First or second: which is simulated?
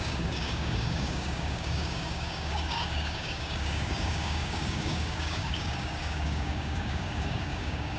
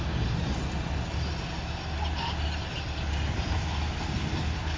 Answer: first